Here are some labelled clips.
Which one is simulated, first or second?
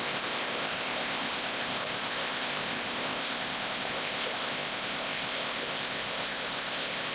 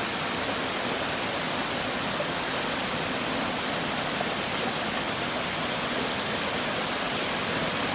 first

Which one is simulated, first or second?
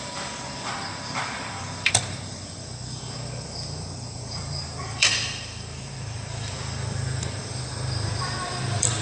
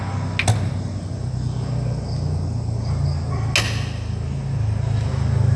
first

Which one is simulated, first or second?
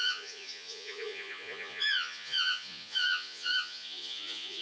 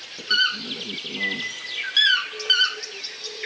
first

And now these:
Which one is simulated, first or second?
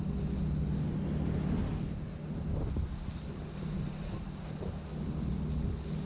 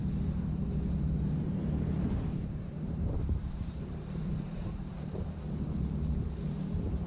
second